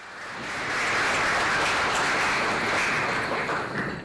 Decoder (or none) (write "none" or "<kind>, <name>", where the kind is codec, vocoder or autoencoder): none